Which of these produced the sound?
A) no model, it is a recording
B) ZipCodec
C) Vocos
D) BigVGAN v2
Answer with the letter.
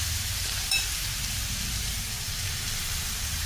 D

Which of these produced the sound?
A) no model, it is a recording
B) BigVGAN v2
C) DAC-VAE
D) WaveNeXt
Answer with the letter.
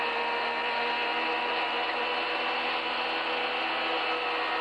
A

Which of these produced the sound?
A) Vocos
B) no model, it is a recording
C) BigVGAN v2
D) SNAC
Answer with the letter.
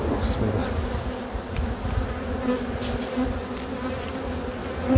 B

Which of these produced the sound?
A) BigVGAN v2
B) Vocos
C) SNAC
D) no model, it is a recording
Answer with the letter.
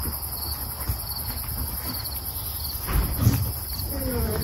D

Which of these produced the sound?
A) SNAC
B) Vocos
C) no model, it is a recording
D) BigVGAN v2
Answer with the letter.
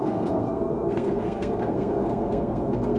A